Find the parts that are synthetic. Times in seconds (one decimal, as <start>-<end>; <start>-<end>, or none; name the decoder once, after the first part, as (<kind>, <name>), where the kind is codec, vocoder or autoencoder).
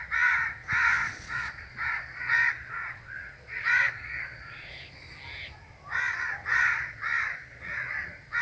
1.0-4.8 (vocoder, Vocos); 6.4-7.0; 7.4-7.9